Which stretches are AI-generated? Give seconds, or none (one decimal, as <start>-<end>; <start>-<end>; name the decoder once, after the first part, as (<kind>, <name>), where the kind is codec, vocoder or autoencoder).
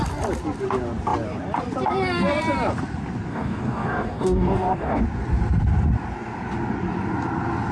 3.3-5.0 (codec, DAC)